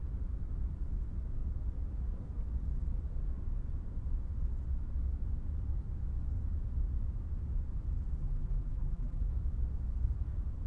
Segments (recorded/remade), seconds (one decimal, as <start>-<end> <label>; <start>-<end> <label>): 0.0-8.2 recorded; 8.2-9.3 remade; 9.3-10.7 recorded